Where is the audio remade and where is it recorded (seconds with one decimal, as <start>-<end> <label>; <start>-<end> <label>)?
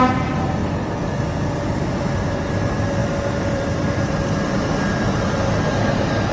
0.0-3.0 recorded; 3.0-6.3 remade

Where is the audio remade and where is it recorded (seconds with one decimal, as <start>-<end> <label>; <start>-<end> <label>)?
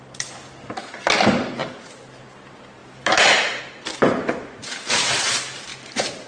0.0-1.6 recorded; 1.6-2.2 remade; 2.2-2.8 recorded; 2.8-3.6 remade; 3.6-4.6 recorded; 4.6-5.3 remade; 5.3-5.7 recorded; 5.7-6.3 remade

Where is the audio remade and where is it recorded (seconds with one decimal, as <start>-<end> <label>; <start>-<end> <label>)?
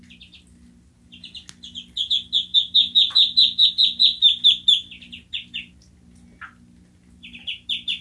0.0-8.0 recorded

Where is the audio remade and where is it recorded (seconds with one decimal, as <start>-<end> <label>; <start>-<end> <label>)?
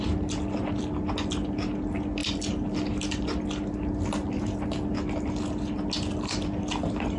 0.0-2.2 recorded; 2.2-3.4 remade; 3.4-7.2 recorded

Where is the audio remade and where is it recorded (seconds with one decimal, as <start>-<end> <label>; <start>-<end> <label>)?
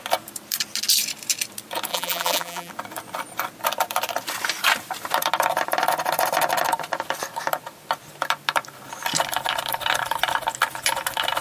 0.0-1.9 recorded; 1.9-2.7 remade; 2.7-11.4 recorded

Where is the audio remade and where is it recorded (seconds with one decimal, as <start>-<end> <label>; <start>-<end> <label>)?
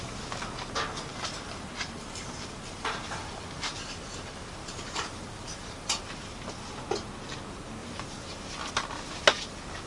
0.0-1.1 recorded; 1.1-6.3 remade; 6.3-7.8 recorded; 7.8-8.7 remade; 8.7-9.9 recorded